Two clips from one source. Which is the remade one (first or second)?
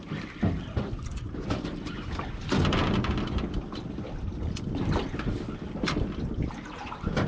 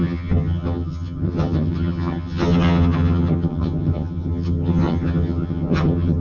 second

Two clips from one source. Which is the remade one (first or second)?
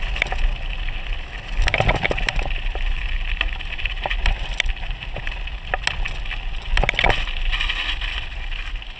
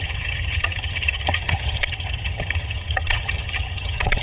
second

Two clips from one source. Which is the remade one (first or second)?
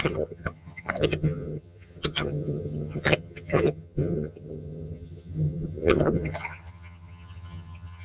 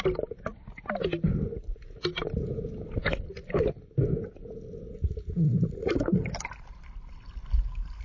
first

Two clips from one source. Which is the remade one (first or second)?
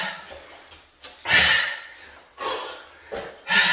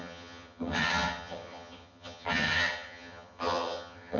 second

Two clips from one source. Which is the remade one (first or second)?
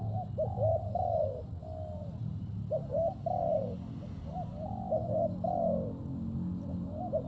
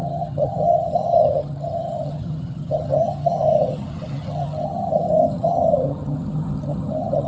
second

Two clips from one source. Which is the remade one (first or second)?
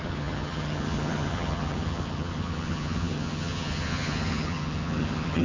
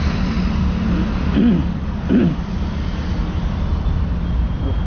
first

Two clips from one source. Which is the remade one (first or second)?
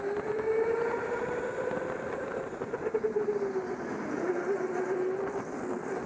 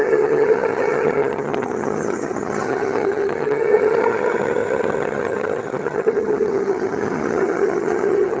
second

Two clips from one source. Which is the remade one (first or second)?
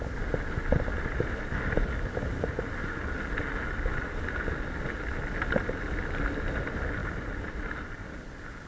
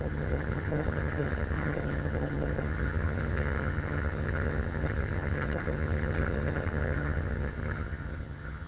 second